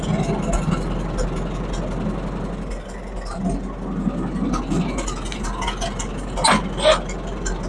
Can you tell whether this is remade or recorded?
recorded